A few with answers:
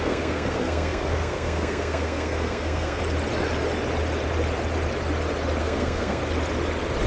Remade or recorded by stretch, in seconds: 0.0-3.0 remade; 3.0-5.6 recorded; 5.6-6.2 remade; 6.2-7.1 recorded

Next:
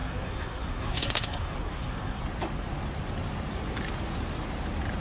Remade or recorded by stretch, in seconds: 0.0-2.2 remade; 2.2-5.0 recorded

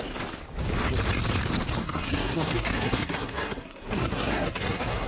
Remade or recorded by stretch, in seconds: 0.0-1.8 recorded; 1.8-5.1 remade

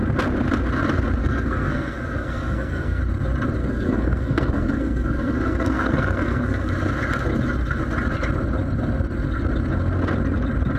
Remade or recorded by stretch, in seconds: 0.0-1.2 recorded; 1.2-3.0 remade; 3.0-3.6 recorded; 3.6-6.7 remade; 6.7-10.8 recorded

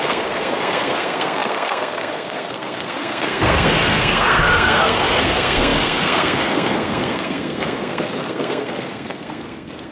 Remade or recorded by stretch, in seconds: 0.0-9.9 remade

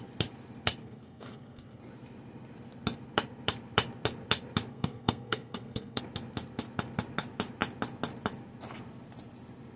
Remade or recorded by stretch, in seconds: 0.0-0.8 recorded; 0.8-1.8 remade; 1.8-4.7 recorded; 4.7-6.0 remade; 6.0-9.8 recorded

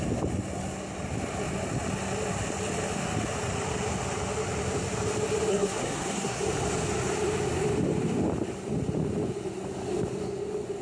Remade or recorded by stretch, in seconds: 0.0-5.5 recorded; 5.5-6.4 remade; 6.4-10.8 recorded